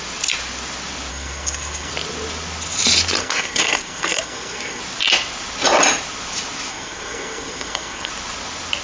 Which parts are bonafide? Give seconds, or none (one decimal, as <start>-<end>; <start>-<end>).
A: 0.0-1.1; 1.9-3.2; 4.8-6.7; 8.1-8.8